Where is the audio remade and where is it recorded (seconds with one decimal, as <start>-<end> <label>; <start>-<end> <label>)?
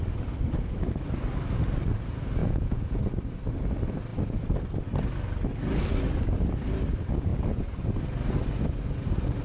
0.0-2.4 recorded; 2.4-3.0 remade; 3.0-9.4 recorded